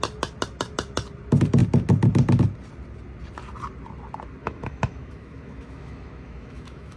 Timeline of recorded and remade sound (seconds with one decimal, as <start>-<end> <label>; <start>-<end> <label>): 0.0-4.4 recorded; 4.4-7.0 remade